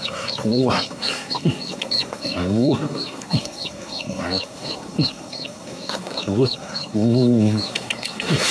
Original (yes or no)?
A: no